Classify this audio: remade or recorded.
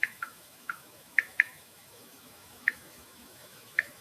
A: remade